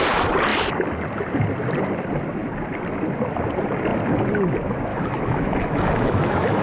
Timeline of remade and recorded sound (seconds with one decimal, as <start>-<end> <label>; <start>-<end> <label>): 0.0-4.9 recorded; 4.9-6.6 remade